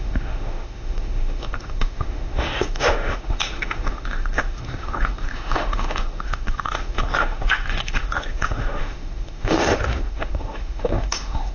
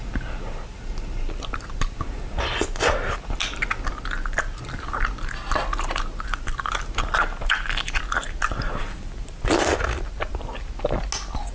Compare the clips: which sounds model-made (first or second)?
first